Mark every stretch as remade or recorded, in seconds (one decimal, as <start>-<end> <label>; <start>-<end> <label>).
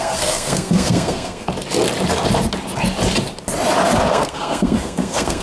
0.0-1.5 remade; 1.5-4.1 recorded; 4.1-5.4 remade